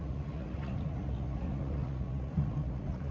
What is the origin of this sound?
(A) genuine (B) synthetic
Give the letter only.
B